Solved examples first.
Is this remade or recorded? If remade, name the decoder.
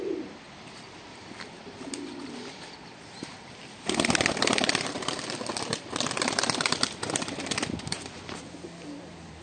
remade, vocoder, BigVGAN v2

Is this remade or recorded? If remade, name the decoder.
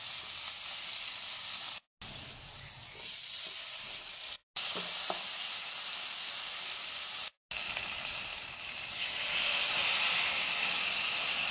recorded